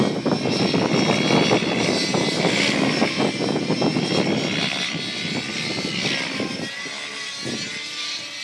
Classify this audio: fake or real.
real